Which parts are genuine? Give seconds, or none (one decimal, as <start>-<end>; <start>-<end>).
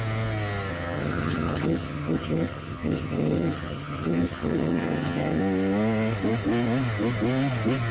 0.0-0.7; 5.4-7.9